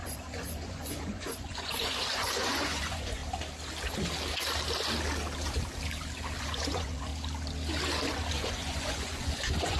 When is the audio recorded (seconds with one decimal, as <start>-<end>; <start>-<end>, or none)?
3.2-6.4; 7.1-8.3